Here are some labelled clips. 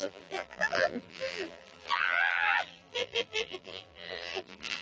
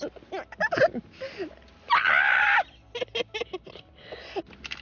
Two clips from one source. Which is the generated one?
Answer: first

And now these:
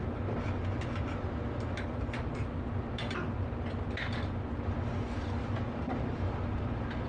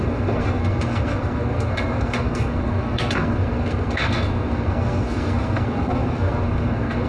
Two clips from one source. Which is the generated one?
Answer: second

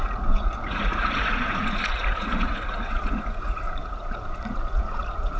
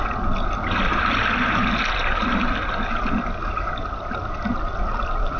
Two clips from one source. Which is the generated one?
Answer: first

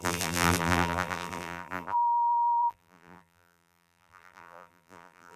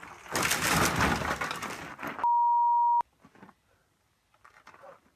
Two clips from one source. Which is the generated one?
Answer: first